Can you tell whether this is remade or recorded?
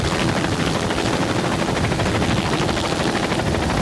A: recorded